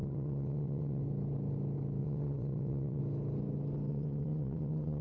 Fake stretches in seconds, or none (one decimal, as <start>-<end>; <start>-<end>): 0.0-1.0; 2.0-3.0; 3.9-5.0